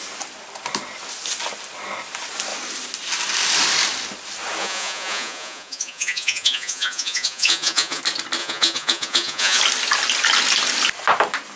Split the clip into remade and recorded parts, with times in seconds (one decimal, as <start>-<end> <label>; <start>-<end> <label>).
0.0-4.6 recorded; 4.6-8.0 remade; 8.0-8.4 recorded; 8.4-9.6 remade; 9.6-11.6 recorded